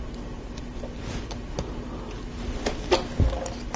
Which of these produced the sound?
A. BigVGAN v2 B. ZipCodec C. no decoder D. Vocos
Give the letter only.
C